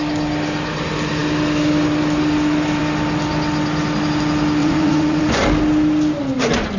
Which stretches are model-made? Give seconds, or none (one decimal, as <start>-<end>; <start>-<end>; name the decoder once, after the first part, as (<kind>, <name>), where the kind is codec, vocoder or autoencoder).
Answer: 4.6-5.4 (vocoder, Vocos)